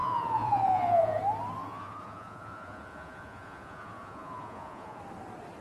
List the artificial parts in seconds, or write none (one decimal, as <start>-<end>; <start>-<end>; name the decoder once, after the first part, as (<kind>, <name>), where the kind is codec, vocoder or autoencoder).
0.0-1.2 (vocoder, Vocos); 1.6-5.0